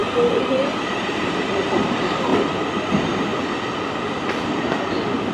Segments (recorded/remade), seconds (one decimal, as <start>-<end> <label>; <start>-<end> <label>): 0.0-0.8 recorded; 0.8-2.3 remade; 2.3-2.9 recorded; 2.9-3.3 remade; 3.3-5.3 recorded